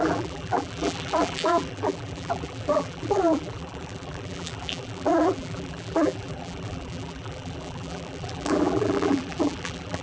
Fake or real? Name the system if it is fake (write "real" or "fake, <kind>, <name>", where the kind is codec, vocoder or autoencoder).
fake, vocoder, BigVGAN v2